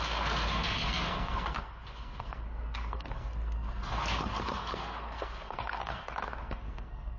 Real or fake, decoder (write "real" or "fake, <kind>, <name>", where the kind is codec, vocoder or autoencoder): fake, codec, SNAC